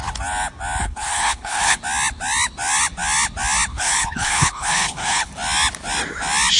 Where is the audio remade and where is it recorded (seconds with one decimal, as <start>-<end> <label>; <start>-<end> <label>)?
0.0-0.8 recorded; 0.8-1.8 remade; 1.8-3.7 recorded; 3.7-5.3 remade; 5.3-6.6 recorded